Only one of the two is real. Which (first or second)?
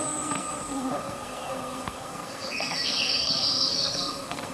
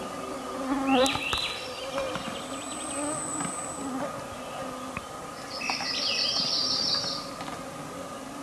second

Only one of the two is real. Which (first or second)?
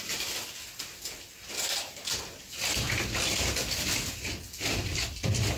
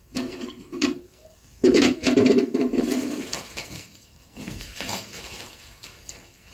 first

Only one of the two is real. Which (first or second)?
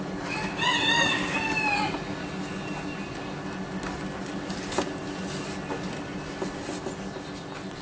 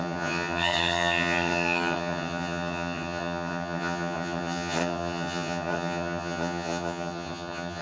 first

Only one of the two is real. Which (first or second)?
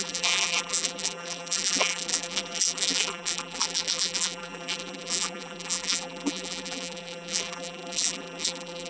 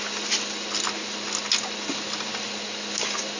second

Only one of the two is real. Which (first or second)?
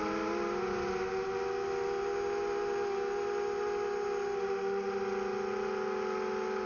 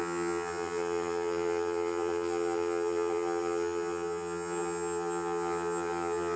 first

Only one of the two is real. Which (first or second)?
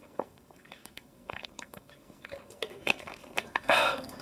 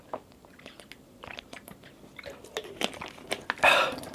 second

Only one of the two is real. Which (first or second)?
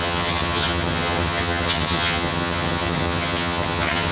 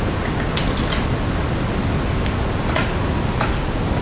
second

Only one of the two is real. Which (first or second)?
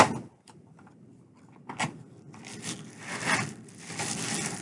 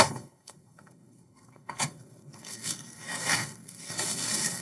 first